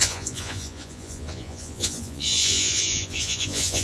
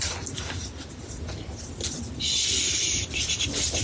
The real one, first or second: second